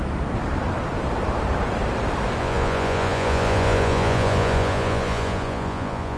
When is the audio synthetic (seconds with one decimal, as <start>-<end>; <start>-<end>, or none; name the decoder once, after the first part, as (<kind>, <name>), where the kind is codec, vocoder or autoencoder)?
2.4-6.2 (vocoder, Vocos)

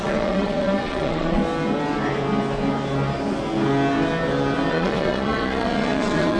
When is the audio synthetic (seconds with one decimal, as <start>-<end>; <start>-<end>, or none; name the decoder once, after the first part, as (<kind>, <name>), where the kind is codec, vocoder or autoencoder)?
0.0-1.4 (vocoder, Vocos); 4.7-6.4

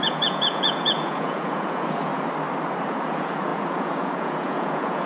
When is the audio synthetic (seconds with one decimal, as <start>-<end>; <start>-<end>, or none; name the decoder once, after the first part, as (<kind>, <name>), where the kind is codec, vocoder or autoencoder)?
0.0-2.1 (vocoder, Vocos); 2.8-5.1

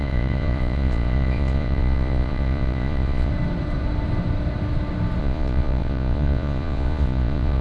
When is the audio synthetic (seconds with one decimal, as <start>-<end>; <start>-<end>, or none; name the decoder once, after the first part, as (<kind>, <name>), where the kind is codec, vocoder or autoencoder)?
0.0-3.3 (vocoder, Vocos); 5.2-7.6

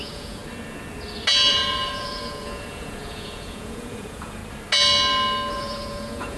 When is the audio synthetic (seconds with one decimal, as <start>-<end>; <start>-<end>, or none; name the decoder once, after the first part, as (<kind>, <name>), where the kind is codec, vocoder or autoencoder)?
0.0-0.4 (vocoder, Vocos); 1.5-4.4; 5.5-6.4

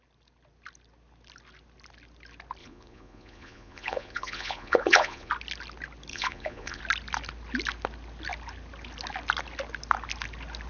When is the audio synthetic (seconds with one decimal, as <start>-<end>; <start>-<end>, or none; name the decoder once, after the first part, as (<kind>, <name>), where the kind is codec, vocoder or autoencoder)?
2.6-5.3 (vocoder, Vocos); 6.1-6.8